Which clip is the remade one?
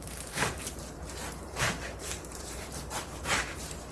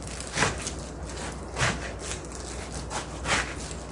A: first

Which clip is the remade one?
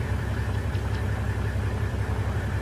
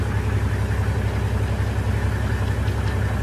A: first